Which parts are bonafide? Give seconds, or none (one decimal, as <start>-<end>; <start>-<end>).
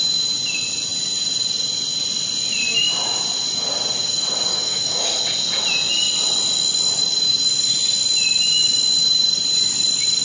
0.0-4.5; 5.2-10.2